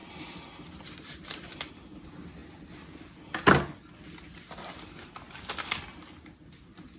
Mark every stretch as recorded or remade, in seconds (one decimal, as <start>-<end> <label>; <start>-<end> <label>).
0.0-7.0 recorded